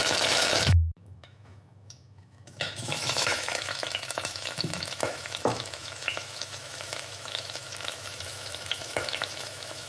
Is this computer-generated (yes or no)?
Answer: yes